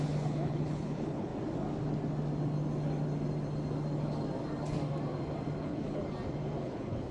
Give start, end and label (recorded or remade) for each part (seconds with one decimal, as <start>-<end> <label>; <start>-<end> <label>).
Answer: 0.0-1.3 remade; 1.3-5.6 recorded; 5.6-6.0 remade; 6.0-6.6 recorded; 6.6-7.1 remade